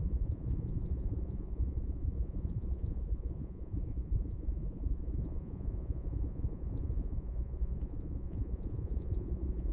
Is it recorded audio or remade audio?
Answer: remade